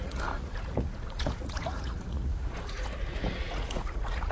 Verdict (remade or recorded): remade